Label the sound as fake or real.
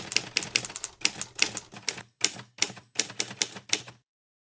real